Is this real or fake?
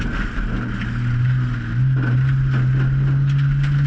real